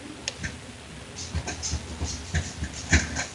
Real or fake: real